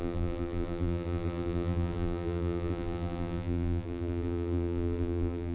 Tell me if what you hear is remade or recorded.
remade